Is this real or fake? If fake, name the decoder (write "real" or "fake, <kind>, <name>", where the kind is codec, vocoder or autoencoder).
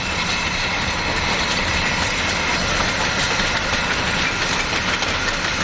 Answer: real